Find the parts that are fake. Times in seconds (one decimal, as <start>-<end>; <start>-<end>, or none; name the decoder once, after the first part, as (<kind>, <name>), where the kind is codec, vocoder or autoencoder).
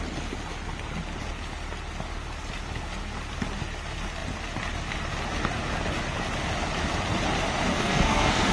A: 7.7-8.5 (codec, SNAC)